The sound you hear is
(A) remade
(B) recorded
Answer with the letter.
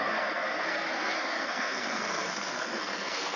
A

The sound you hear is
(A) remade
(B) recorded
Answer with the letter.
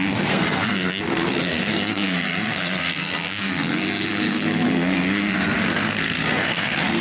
A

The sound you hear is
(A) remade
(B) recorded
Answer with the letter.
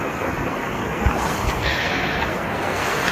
A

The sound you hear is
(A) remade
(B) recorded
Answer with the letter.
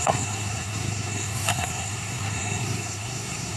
A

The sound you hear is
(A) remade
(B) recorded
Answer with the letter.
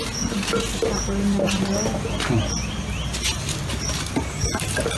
B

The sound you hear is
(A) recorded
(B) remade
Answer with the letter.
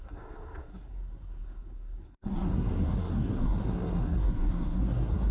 B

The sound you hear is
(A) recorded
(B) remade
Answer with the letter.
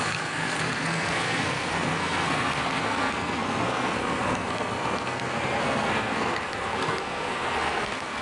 B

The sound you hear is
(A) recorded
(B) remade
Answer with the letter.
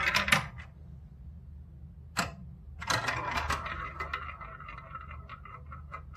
A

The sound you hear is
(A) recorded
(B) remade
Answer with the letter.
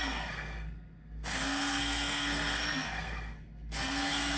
B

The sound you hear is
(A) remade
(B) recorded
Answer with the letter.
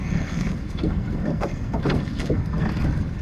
A